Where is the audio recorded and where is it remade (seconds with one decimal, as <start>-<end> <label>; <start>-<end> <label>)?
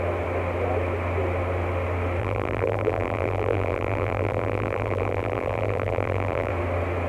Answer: 0.0-2.2 recorded; 2.2-6.5 remade; 6.5-7.1 recorded